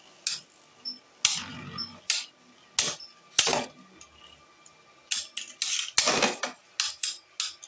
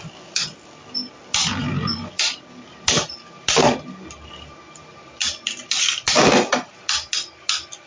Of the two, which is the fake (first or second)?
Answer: second